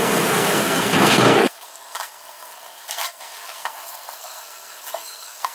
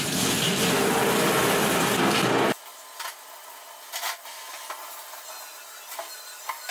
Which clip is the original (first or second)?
second